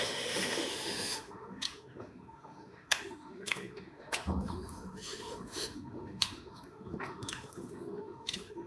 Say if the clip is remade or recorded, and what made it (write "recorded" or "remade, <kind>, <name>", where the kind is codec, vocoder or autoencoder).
remade, autoencoder, DAC-VAE